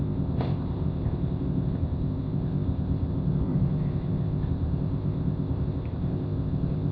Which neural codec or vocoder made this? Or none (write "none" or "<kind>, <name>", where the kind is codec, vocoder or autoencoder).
codec, ZipCodec